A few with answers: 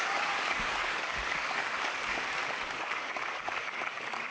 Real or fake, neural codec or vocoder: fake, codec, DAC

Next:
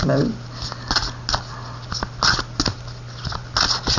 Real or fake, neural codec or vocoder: real